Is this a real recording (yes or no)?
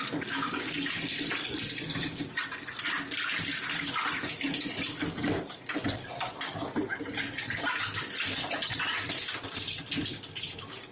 yes